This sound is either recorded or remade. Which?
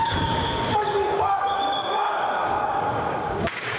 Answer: remade